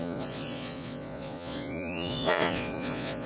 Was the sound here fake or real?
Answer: fake